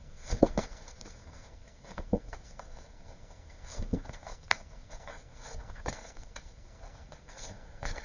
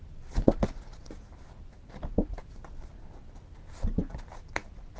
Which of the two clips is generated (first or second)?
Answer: first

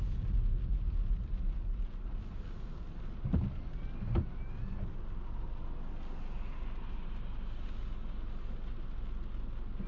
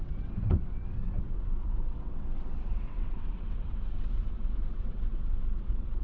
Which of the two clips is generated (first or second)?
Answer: second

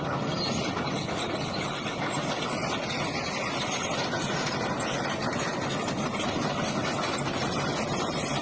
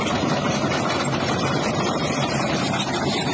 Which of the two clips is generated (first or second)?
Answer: second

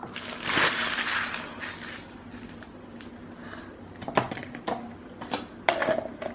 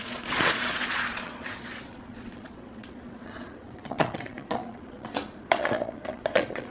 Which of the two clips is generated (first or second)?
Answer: second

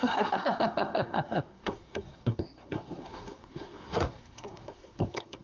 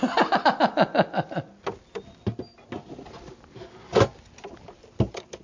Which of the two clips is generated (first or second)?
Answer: first